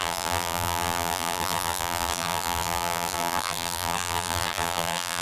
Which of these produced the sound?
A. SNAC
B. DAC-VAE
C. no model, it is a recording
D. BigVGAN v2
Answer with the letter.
D